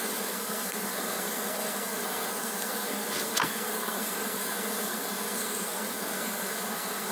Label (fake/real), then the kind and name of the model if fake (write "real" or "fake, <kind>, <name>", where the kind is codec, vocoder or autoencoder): fake, codec, SNAC